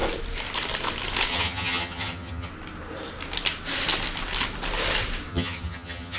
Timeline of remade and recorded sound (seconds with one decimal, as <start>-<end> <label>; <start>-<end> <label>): 0.0-1.3 recorded; 1.3-2.5 remade; 2.5-5.3 recorded; 5.3-6.2 remade